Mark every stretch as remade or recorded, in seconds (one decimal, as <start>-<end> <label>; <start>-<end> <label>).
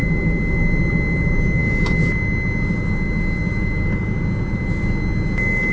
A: 0.0-5.7 recorded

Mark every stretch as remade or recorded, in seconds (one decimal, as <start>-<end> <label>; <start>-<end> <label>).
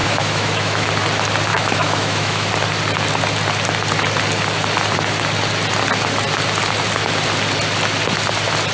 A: 0.0-0.9 remade; 0.9-1.5 recorded; 1.5-2.5 remade; 2.5-8.7 recorded